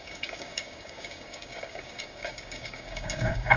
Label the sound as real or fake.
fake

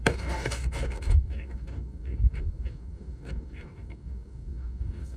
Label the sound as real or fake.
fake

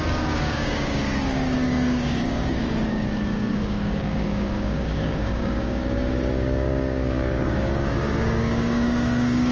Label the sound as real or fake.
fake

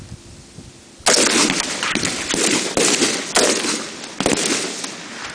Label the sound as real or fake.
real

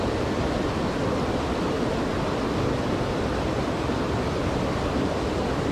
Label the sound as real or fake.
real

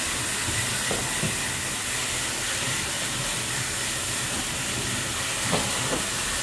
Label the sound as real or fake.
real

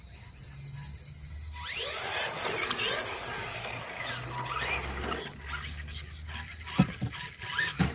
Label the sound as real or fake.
real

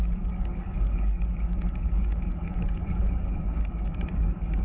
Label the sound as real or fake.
fake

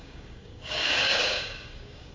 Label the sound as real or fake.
fake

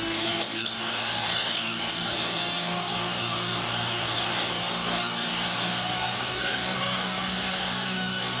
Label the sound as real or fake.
fake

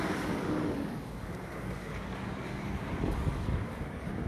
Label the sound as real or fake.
fake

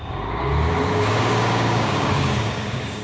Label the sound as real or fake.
fake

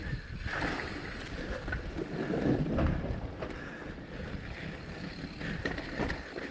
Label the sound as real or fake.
real